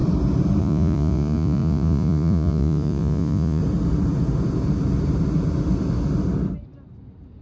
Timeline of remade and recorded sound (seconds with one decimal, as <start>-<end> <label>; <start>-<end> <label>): 0.0-0.6 recorded; 0.6-3.6 remade; 3.6-7.4 recorded